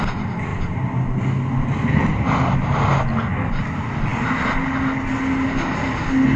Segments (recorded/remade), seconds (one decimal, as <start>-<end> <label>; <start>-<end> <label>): 0.0-6.4 recorded